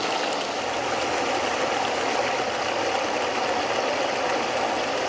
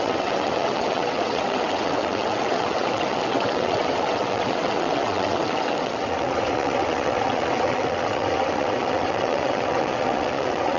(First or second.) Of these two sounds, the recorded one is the first